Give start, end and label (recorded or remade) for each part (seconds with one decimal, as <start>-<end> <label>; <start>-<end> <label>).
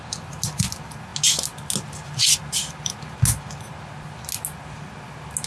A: 0.0-5.5 recorded